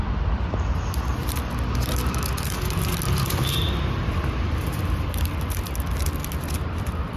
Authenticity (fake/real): fake